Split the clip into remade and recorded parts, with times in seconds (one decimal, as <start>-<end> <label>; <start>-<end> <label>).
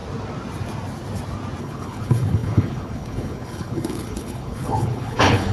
0.0-1.6 recorded; 1.6-5.5 remade